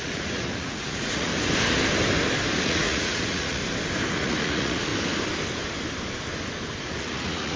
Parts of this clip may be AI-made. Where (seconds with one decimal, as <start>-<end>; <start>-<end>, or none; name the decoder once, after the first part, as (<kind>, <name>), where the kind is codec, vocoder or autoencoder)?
0.0-1.3 (vocoder, Vocos); 2.6-3.6; 4.1-4.9; 6.8-7.6